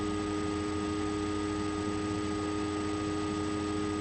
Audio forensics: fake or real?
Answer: real